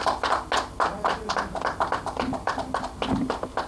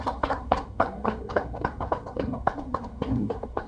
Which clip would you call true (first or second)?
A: first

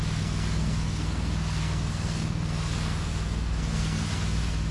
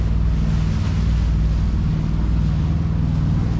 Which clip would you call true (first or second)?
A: second